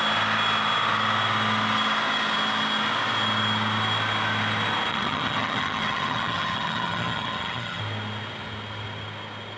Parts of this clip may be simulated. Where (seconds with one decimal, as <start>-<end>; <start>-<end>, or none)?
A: 4.9-7.8